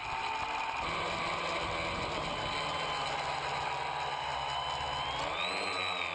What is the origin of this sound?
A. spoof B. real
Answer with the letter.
B